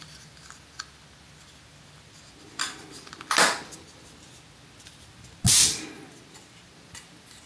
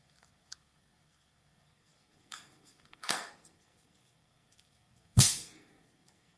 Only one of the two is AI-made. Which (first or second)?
second